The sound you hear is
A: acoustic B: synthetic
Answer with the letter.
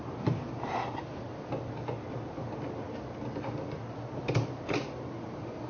A